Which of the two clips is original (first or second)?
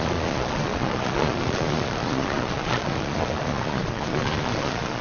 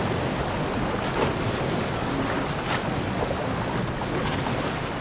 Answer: second